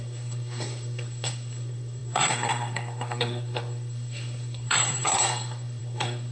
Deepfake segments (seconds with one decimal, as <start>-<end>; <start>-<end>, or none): 0.0-6.3